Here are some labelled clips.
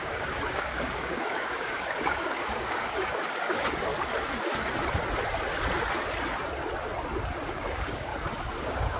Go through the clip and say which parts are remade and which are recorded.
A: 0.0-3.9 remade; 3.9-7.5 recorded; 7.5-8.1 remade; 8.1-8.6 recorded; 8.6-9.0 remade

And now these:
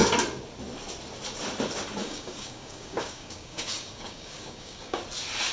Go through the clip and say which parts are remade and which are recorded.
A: 0.0-2.0 recorded; 2.0-5.0 remade; 5.0-5.5 recorded

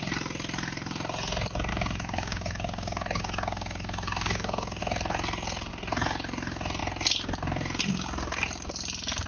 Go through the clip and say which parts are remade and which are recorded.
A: 0.0-1.7 recorded; 1.7-4.8 remade; 4.8-9.3 recorded

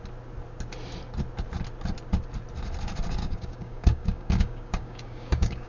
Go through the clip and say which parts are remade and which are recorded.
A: 0.0-3.2 recorded; 3.2-5.7 remade

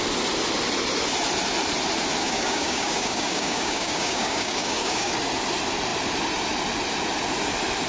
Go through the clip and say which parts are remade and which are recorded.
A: 0.0-2.2 recorded; 2.2-5.1 remade; 5.1-7.9 recorded

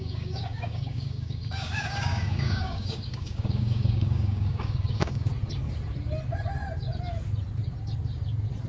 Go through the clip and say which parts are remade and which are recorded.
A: 0.0-5.3 remade; 5.3-8.7 recorded

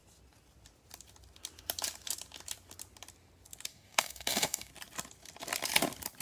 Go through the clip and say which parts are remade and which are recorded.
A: 0.0-3.7 recorded; 3.7-4.7 remade; 4.7-6.2 recorded